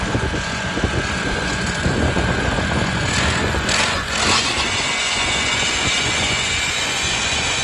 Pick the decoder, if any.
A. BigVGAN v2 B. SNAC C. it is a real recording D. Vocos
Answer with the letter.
D